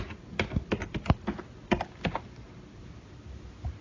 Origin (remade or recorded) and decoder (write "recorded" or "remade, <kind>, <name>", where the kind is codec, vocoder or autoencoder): recorded